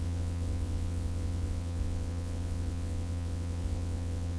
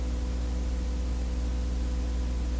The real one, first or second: second